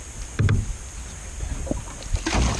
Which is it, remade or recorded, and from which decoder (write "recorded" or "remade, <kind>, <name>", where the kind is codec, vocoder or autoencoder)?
recorded